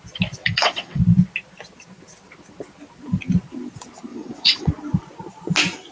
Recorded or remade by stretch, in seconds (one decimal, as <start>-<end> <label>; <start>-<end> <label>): 0.0-0.4 recorded; 0.4-1.0 remade; 1.0-4.1 recorded; 4.1-4.7 remade; 4.7-5.9 recorded